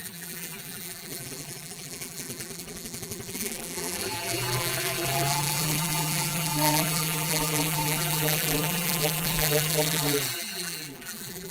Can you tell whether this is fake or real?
fake